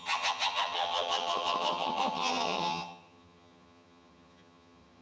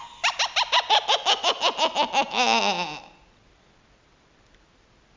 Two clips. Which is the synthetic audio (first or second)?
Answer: first